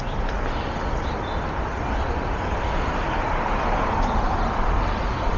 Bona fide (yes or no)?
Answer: yes